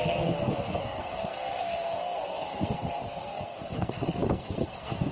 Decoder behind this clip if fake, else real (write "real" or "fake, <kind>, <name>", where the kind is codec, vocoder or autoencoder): fake, codec, SNAC